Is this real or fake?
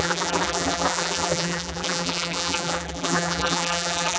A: fake